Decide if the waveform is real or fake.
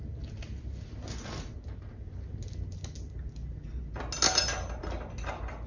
real